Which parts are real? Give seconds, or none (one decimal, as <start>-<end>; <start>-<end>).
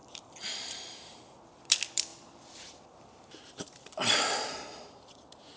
0.0-1.6